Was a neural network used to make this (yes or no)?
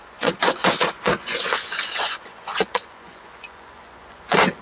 yes